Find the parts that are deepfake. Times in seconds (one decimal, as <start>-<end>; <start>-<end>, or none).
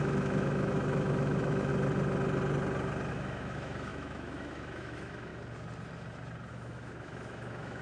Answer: 0.0-1.7; 3.1-5.3; 6.5-7.8